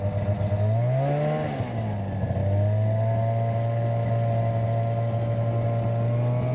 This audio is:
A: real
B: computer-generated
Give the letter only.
A